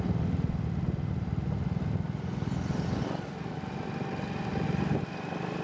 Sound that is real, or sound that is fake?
real